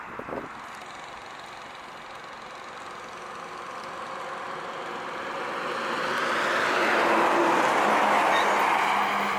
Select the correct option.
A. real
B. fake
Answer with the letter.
A